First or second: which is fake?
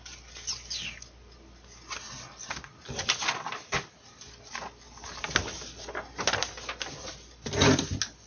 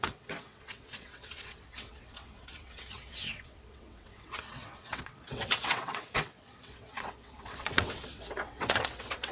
second